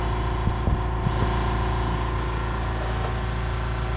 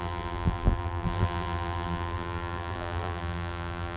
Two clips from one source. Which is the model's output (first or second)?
second